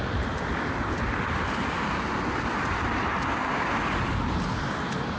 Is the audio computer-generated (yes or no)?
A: no